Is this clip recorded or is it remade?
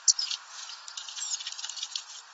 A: remade